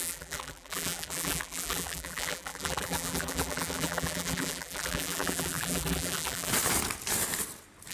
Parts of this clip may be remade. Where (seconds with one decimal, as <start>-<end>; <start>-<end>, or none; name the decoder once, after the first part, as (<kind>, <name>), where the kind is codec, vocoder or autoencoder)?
0.0-6.5 (vocoder, BigVGAN v2)